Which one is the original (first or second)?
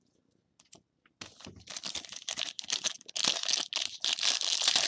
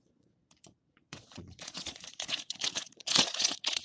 first